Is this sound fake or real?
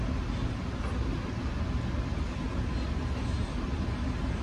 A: real